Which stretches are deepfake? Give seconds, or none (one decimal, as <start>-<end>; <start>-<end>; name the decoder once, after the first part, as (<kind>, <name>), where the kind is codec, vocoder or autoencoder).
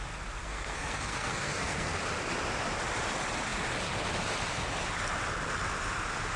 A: 0.4-2.0 (codec, SNAC)